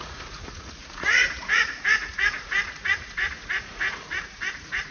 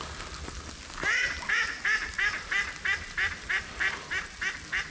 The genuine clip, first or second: second